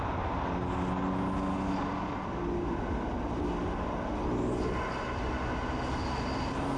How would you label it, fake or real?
real